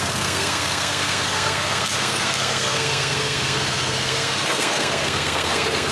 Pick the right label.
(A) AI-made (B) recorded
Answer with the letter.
A